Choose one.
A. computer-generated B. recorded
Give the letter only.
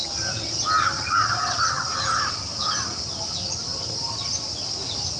B